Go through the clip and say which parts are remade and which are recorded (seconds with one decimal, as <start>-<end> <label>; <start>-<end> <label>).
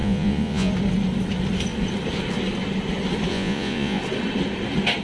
0.0-0.7 remade; 0.7-3.3 recorded; 3.3-4.0 remade; 4.0-5.0 recorded